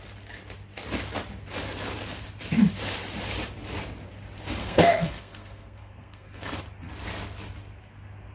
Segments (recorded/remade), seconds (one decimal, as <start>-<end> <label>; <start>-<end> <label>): 0.0-4.6 recorded; 4.6-6.6 remade; 6.6-8.3 recorded